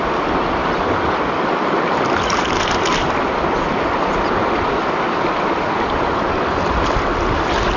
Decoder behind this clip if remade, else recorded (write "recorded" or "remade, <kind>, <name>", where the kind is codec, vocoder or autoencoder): recorded